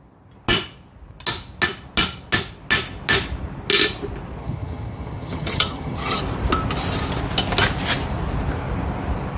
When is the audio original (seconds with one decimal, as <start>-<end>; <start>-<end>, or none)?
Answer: 0.0-4.4; 6.2-9.4